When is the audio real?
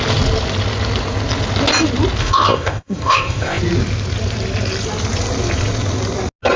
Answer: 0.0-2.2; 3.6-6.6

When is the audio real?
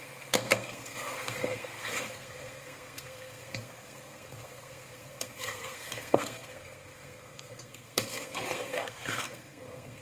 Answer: none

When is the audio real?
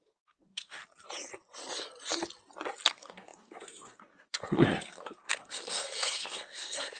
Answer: 0.8-2.9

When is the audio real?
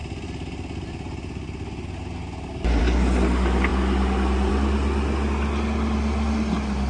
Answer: 0.0-6.9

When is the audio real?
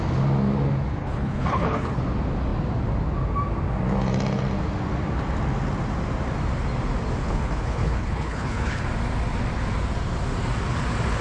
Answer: 0.0-1.0; 2.0-7.2; 8.8-11.2